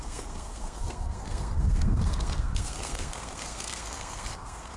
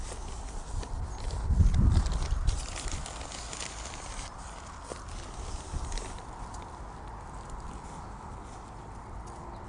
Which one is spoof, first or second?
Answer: first